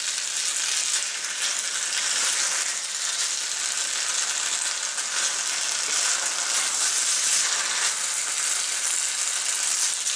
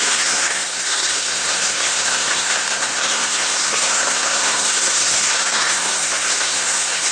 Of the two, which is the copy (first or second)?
second